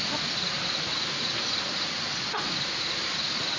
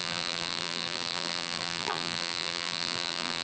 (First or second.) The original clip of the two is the first